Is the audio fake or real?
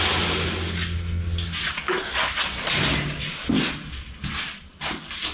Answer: real